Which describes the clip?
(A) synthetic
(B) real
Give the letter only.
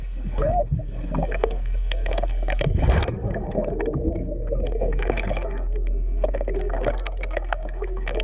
A